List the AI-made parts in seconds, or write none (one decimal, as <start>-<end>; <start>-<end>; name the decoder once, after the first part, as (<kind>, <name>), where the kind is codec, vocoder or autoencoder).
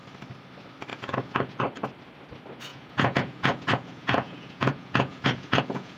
0.9-1.6 (vocoder, Vocos); 2.7-6.0